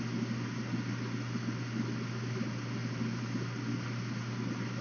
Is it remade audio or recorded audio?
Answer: recorded